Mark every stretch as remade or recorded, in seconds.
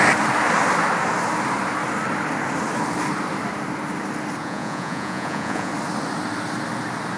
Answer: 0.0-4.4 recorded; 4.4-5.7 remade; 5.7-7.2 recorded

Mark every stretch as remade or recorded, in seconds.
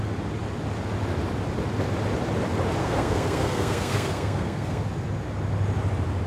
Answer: 0.0-2.8 recorded; 2.8-4.8 remade; 4.8-6.3 recorded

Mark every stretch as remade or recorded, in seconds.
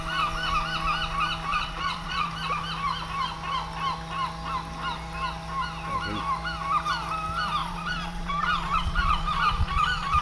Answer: 0.0-1.5 recorded; 1.5-2.3 remade; 2.3-7.6 recorded; 7.6-10.2 remade